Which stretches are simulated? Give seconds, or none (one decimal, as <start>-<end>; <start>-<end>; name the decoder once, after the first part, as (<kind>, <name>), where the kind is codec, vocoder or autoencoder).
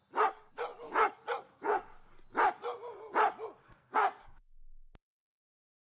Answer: 3.6-4.4 (codec, SNAC)